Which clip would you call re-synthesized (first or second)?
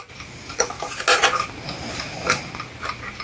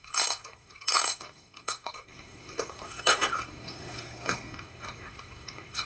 second